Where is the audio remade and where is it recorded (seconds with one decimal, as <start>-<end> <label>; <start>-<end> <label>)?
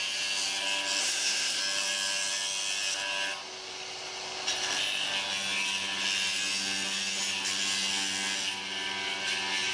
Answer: 0.0-1.0 recorded; 1.0-1.6 remade; 1.6-9.7 recorded